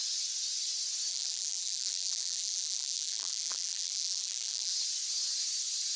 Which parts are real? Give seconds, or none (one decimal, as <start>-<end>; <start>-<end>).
0.0-1.1; 4.7-6.0